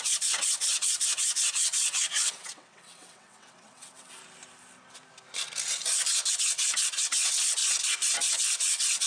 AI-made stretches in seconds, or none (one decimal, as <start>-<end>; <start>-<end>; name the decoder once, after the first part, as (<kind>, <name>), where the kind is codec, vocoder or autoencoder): 0.0-4.2 (vocoder, WaveNeXt); 6.3-7.6; 8.3-9.1